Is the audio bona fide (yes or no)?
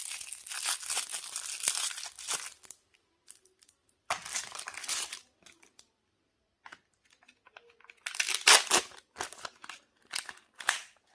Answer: yes